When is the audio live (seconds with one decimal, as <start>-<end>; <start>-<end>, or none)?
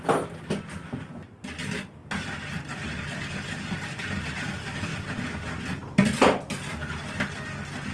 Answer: 0.0-4.9; 7.2-7.9